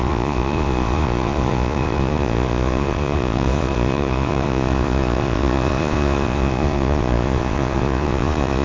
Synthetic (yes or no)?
yes